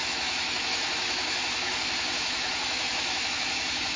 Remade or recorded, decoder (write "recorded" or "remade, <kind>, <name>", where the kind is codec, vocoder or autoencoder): remade, autoencoder, DAC-VAE